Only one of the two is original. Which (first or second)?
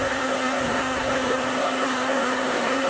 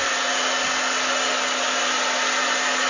second